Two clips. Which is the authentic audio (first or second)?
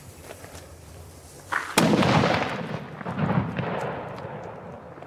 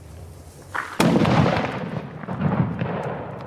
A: first